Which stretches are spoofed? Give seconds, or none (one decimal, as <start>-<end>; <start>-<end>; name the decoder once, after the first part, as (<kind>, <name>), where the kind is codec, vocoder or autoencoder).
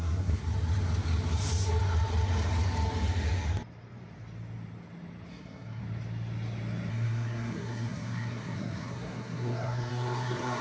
0.0-0.4 (codec, SNAC); 5.3-5.8; 6.9-10.6